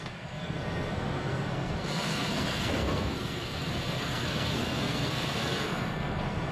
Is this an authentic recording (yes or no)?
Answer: no